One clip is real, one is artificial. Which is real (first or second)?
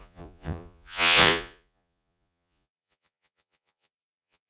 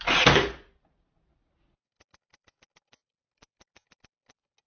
second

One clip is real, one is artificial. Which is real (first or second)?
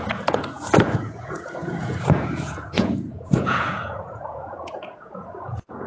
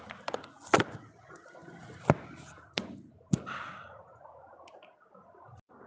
second